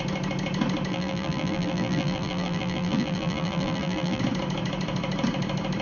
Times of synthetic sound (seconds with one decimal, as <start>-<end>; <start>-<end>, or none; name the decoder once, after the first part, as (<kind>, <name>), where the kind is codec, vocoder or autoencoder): 0.9-4.2 (vocoder, BigVGAN v2)